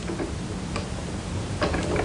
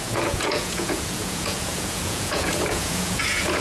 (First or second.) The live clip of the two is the first